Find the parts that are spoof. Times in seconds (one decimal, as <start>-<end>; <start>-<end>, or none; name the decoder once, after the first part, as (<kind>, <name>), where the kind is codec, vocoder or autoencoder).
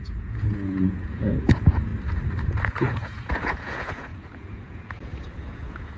0.0-1.9 (vocoder, Vocos); 2.6-6.0